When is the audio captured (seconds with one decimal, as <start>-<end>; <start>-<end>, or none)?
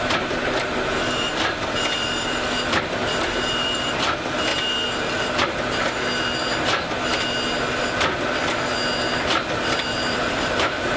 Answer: 4.5-9.4